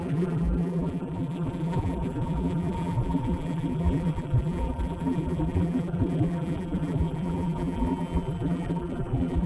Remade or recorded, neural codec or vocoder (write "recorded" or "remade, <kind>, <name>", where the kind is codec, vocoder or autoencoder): remade, vocoder, BigVGAN v2